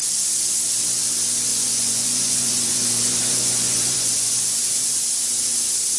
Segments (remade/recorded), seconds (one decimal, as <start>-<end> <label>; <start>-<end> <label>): 0.0-1.5 recorded; 1.5-5.1 remade; 5.1-6.0 recorded